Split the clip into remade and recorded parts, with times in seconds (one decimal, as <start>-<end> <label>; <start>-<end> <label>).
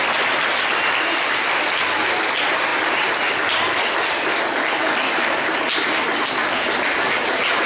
0.0-7.7 recorded